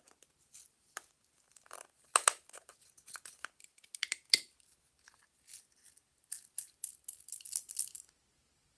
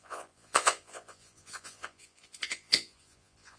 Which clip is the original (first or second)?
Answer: first